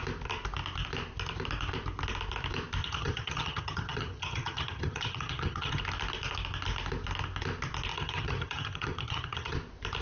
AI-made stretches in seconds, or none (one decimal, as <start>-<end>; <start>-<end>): 2.8-5.8; 7.9-9.6